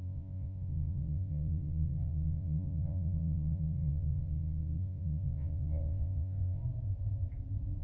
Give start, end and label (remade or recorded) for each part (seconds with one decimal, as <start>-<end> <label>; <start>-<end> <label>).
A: 0.0-6.6 remade; 6.6-7.8 recorded